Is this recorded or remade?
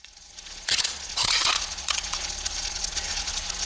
remade